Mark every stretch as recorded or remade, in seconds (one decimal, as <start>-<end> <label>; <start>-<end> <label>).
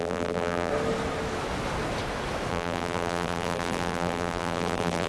0.0-0.7 remade; 0.7-2.5 recorded; 2.5-5.1 remade